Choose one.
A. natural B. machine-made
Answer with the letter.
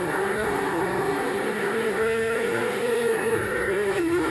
B